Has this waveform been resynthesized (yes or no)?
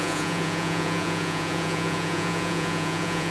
yes